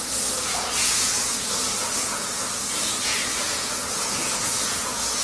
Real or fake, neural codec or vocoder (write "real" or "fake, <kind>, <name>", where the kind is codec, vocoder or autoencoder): fake, vocoder, Vocos